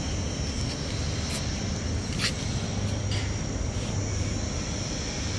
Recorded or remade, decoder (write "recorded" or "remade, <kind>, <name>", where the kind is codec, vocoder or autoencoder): recorded